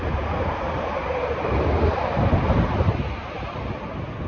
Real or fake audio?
real